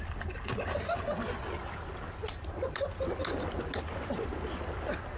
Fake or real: real